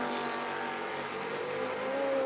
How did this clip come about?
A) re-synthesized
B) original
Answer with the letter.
B